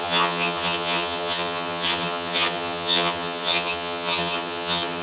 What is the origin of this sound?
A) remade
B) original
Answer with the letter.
A